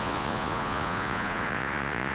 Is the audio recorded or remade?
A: remade